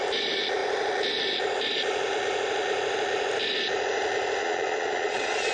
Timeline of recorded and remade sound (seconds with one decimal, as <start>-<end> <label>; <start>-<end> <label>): 0.0-4.4 recorded; 4.4-5.5 remade